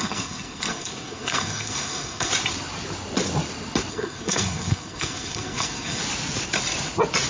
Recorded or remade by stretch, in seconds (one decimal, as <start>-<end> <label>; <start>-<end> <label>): 0.0-2.3 remade; 2.3-3.9 recorded; 3.9-6.0 remade; 6.0-7.3 recorded